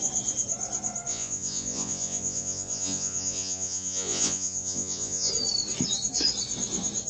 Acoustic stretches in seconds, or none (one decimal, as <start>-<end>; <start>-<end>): 0.0-1.1; 5.3-7.1